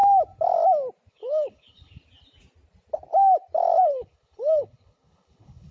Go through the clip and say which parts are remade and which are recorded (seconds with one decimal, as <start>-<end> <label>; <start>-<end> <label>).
0.0-1.1 recorded; 1.1-2.0 remade; 2.0-3.8 recorded; 3.8-5.7 remade

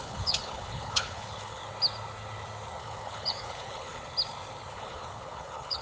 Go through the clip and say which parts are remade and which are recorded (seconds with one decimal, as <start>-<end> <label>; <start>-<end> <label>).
0.0-1.6 remade; 1.6-2.8 recorded; 2.8-4.0 remade; 4.0-4.7 recorded; 4.7-5.8 remade